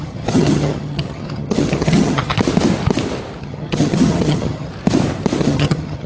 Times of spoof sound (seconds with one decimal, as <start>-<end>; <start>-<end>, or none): 0.0-2.3; 3.4-4.7; 5.4-6.1